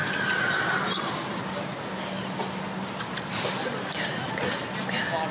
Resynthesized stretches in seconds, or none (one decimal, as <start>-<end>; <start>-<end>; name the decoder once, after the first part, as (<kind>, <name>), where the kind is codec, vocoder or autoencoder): none